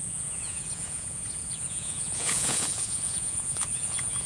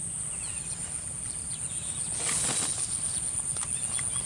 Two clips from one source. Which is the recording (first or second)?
second